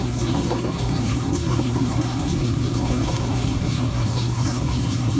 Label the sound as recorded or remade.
remade